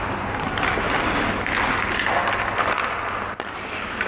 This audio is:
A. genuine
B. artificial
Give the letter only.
A